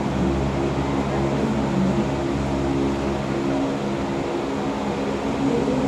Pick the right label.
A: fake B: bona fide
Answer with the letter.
B